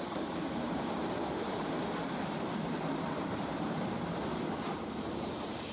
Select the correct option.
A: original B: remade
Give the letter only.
B